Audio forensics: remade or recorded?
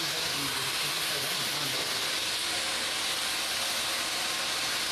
recorded